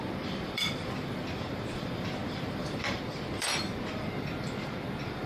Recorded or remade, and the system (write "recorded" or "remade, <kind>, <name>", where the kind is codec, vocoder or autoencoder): remade, vocoder, BigVGAN v2